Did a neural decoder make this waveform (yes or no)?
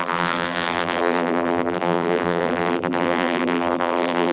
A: yes